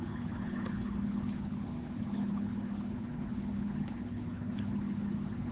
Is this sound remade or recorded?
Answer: remade